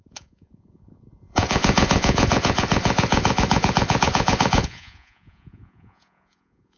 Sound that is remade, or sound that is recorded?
remade